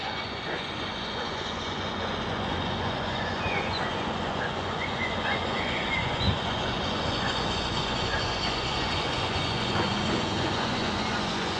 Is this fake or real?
fake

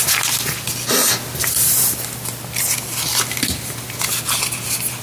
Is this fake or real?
real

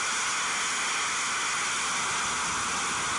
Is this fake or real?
real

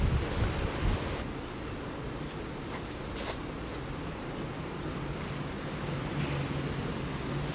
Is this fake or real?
real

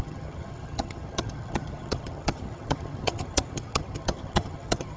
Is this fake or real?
fake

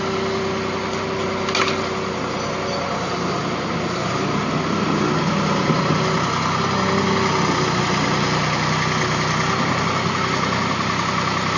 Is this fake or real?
real